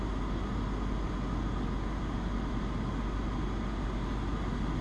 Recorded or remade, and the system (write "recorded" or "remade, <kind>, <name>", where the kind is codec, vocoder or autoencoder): recorded